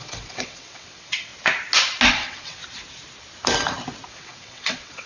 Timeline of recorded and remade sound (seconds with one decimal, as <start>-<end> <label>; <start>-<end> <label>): 0.0-1.3 remade; 1.3-2.1 recorded; 2.1-2.6 remade; 2.6-4.1 recorded; 4.1-5.1 remade